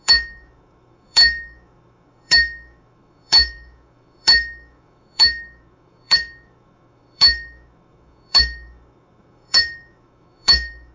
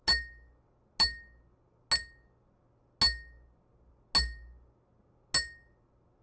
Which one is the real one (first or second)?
second